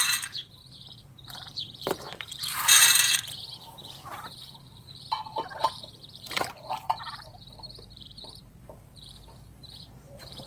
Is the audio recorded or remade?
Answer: remade